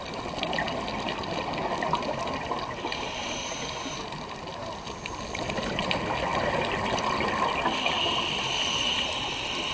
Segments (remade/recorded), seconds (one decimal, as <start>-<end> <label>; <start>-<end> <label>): 0.0-9.7 recorded